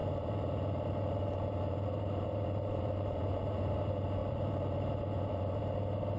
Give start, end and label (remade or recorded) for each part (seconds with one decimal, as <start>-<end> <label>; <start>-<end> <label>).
0.0-3.7 remade; 3.7-4.2 recorded; 4.2-5.6 remade; 5.6-6.2 recorded